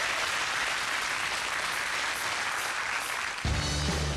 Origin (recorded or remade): recorded